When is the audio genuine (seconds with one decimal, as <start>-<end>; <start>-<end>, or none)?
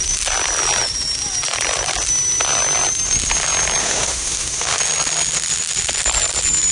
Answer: 0.0-3.8; 4.8-6.7